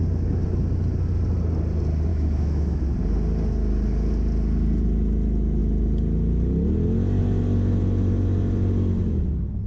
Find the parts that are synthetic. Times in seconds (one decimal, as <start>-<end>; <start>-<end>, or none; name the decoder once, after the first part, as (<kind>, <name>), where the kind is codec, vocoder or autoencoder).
2.1-2.8 (autoencoder, DAC-VAE)